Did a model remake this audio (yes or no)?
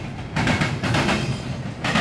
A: no